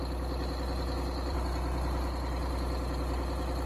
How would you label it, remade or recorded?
recorded